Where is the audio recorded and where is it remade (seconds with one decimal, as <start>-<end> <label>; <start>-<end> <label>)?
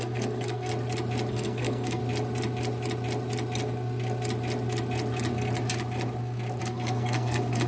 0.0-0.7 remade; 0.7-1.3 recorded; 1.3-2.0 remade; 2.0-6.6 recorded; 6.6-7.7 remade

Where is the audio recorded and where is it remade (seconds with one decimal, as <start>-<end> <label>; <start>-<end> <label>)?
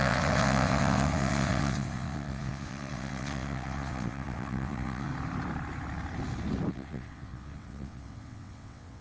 0.0-5.1 remade; 5.1-6.7 recorded; 6.7-9.0 remade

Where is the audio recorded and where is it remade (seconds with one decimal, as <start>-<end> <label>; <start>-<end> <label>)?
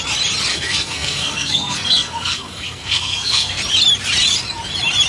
0.0-0.5 recorded; 0.5-3.6 remade; 3.6-5.1 recorded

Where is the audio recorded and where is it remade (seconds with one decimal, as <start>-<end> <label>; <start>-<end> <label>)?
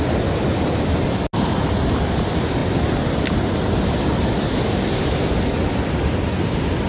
0.0-6.9 recorded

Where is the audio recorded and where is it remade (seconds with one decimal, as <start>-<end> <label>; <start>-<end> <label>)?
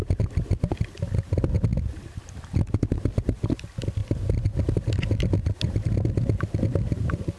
0.0-1.7 recorded; 1.7-2.3 remade; 2.3-7.4 recorded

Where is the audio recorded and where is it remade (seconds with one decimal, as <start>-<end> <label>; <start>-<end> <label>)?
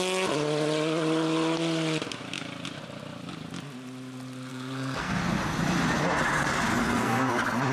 0.0-4.5 recorded; 4.5-5.2 remade; 5.2-6.8 recorded; 6.8-7.3 remade; 7.3-7.7 recorded